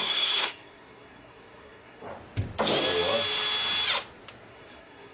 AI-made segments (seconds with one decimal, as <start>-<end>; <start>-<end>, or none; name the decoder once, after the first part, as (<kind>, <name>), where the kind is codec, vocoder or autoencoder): 0.0-2.1 (codec, SNAC); 4.5-5.1